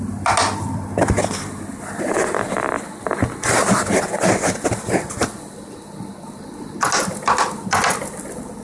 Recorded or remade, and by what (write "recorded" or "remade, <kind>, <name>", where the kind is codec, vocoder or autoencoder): recorded